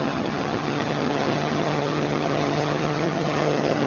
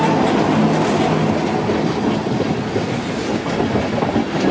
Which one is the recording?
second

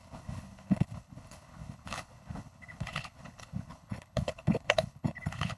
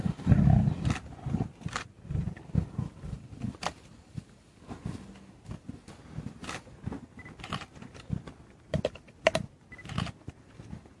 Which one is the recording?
second